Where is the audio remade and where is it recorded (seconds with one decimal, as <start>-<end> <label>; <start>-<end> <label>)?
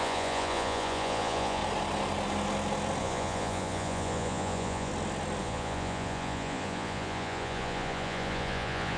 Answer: 0.0-1.6 remade; 1.6-3.0 recorded; 3.0-4.9 remade; 4.9-5.4 recorded; 5.4-9.0 remade